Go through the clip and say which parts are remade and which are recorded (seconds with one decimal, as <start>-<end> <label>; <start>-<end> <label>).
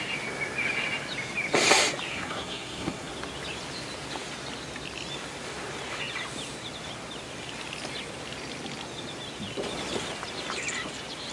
0.0-2.1 recorded; 2.1-3.1 remade; 3.1-11.3 recorded